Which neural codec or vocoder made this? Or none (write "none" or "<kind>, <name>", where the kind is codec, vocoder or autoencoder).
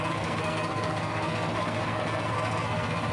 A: codec, SNAC